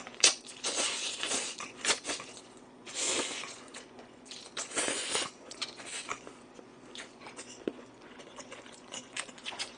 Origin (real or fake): fake